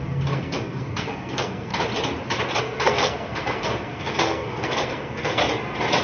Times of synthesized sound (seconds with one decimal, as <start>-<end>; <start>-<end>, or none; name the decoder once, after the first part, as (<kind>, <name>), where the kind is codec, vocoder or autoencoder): 0.0-1.7 (codec, SNAC); 2.6-5.4